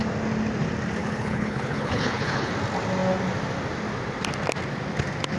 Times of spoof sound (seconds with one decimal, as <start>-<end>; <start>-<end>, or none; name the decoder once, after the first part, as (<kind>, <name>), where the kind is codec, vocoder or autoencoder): 1.0-2.5 (codec, HILCodec)